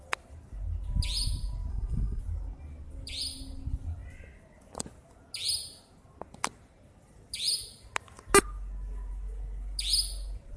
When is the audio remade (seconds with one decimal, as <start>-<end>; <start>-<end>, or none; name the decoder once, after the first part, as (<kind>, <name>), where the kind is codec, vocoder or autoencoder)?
1.7-2.2 (codec, SNAC)